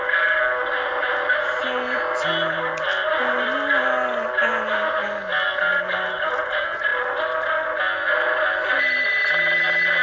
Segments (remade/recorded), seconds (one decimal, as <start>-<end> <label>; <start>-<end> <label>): 0.0-10.0 recorded